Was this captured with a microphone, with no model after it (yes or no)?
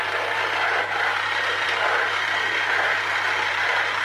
yes